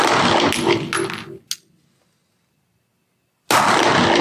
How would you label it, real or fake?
real